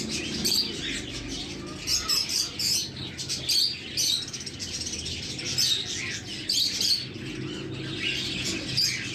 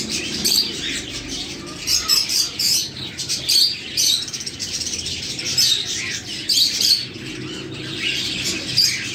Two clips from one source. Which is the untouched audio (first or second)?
first